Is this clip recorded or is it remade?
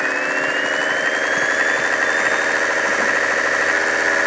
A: recorded